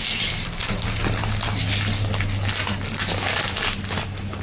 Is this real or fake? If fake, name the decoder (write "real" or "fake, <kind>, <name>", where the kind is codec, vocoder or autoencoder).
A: real